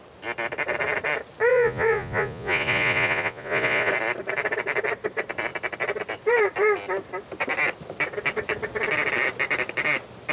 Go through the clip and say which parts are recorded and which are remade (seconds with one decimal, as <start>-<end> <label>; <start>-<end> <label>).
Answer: 0.0-1.5 recorded; 1.5-3.9 remade; 3.9-10.3 recorded